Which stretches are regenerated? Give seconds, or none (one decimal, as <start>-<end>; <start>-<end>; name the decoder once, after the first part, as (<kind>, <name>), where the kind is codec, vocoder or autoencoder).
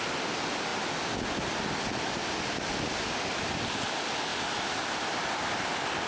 none